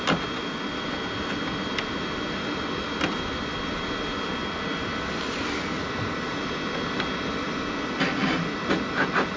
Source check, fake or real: real